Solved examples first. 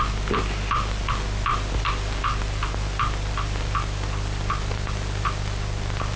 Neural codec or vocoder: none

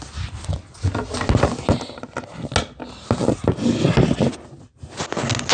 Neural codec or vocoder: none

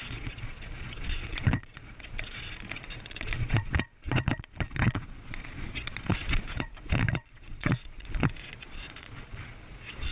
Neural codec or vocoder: vocoder, Vocos